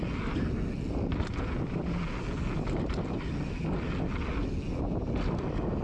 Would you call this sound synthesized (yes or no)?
no